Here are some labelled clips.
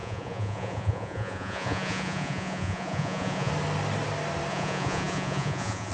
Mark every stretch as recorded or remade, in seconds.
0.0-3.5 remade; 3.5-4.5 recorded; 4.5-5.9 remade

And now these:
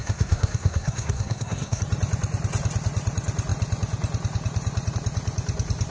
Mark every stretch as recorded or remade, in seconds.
0.0-1.8 remade; 1.8-5.9 recorded

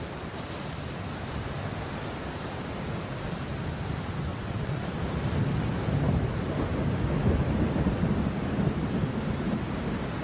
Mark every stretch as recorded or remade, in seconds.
0.0-4.3 recorded; 4.3-4.8 remade; 4.8-10.2 recorded